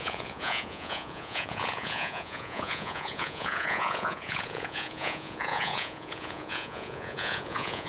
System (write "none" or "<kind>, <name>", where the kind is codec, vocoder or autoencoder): vocoder, Vocos